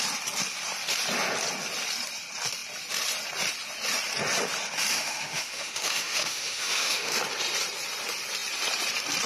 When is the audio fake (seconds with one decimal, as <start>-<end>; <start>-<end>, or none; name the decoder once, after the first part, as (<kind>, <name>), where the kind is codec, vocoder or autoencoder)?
4.9-7.2 (autoencoder, DAC-VAE)